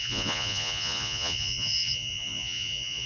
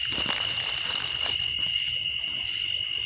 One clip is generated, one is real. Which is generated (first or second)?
first